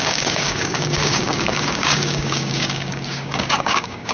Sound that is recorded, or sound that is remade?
remade